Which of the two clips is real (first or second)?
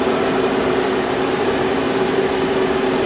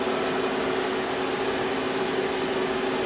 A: second